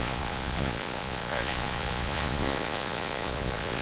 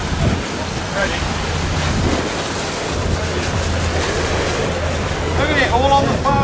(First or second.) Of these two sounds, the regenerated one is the first